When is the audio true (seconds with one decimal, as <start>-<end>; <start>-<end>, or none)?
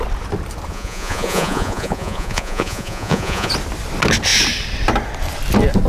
0.0-0.7; 3.5-5.9